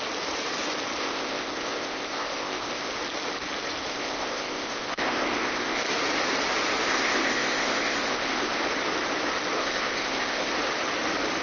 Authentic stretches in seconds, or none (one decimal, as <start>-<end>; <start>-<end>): 0.0-1.0; 2.9-3.9; 5.8-6.9; 8.6-9.6; 10.5-11.4